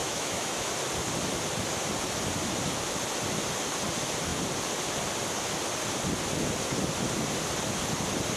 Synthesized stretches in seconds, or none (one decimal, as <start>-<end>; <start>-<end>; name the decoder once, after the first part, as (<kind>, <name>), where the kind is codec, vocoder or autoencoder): 0.0-0.7 (autoencoder, DAC-VAE)